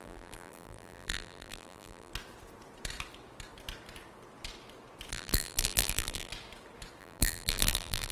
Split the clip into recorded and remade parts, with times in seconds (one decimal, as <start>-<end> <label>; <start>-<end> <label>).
0.0-2.1 remade; 2.1-5.1 recorded; 5.1-6.3 remade; 6.3-7.0 recorded; 7.0-8.1 remade

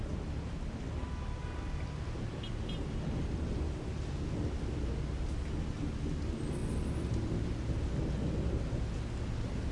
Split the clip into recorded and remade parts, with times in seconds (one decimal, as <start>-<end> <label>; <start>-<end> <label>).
0.0-9.7 recorded

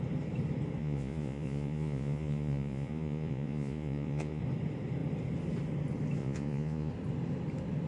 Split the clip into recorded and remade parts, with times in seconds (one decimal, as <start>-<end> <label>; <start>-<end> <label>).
0.0-0.8 recorded; 0.8-4.4 remade; 4.4-6.2 recorded; 6.2-6.9 remade; 6.9-7.9 recorded

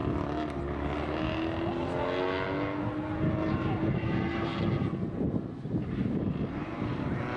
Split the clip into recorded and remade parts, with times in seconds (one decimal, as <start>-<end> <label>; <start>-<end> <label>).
0.0-3.5 recorded; 3.5-4.5 remade; 4.5-5.1 recorded; 5.1-7.4 remade